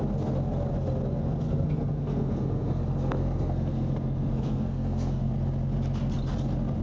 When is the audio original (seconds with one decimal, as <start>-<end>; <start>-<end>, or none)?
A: 0.0-1.2; 5.3-6.8